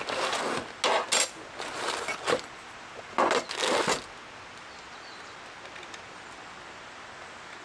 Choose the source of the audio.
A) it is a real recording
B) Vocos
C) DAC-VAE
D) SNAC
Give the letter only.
A